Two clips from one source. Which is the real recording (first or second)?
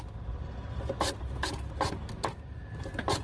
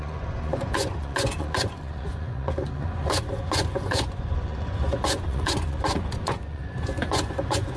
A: first